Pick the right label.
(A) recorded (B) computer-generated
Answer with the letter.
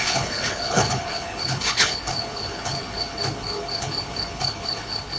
B